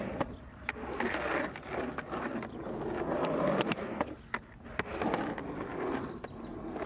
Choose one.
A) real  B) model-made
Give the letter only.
A